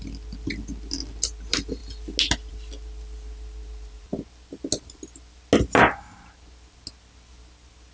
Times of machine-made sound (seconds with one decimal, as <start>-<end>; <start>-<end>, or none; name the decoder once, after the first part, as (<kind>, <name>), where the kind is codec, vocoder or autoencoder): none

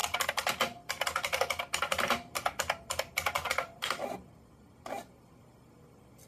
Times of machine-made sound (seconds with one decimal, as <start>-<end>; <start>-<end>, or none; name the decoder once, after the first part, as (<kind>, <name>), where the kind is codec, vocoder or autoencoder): none

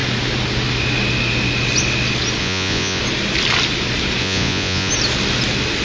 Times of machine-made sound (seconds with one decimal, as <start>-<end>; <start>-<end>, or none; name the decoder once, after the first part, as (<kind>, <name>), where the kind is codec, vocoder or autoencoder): 2.4-3.0 (vocoder, Vocos); 4.2-4.9

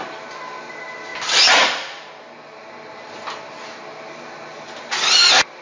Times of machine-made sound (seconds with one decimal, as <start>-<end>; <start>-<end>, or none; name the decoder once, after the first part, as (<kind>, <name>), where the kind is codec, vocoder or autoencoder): none

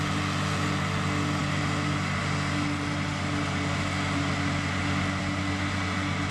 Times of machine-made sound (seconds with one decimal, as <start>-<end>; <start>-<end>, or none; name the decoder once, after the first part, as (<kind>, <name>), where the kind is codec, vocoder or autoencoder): none